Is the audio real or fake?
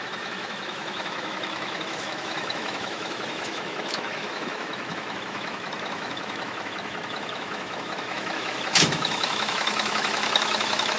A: fake